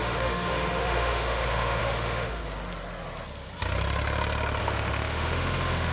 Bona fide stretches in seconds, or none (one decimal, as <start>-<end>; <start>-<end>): 2.4-4.6